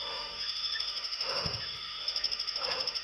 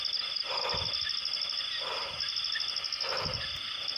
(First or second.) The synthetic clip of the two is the first